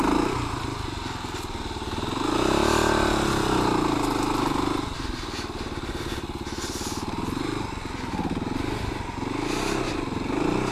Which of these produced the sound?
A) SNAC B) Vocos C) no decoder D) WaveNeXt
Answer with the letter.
C